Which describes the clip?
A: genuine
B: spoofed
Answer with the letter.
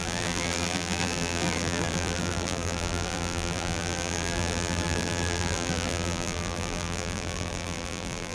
B